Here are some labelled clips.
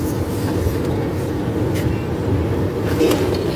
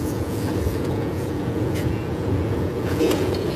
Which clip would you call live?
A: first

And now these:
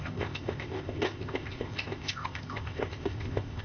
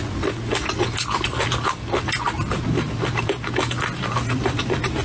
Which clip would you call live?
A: second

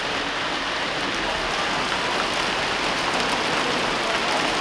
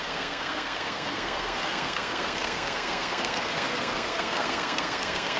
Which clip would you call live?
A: first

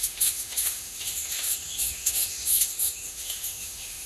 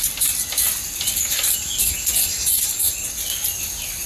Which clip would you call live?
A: second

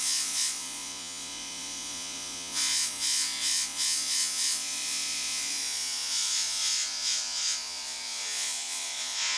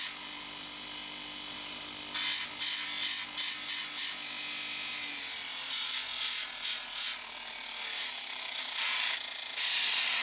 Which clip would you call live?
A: second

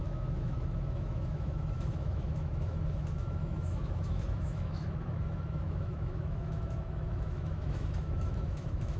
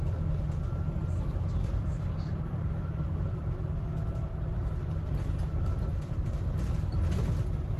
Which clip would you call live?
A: second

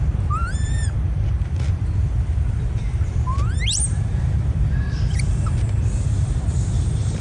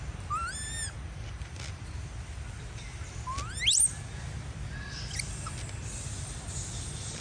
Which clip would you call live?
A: second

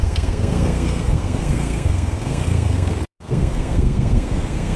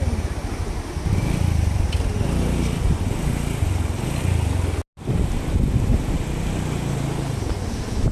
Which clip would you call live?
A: second